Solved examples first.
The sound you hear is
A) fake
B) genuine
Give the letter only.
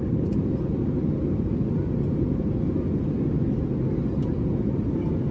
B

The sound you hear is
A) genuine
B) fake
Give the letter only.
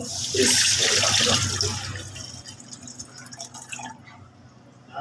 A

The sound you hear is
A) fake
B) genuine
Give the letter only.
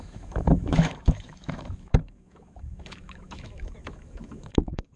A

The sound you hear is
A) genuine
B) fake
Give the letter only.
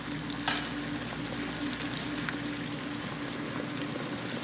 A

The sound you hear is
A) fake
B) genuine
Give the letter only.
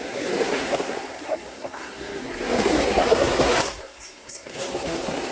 A